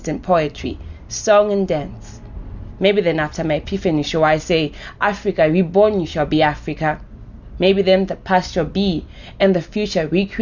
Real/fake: real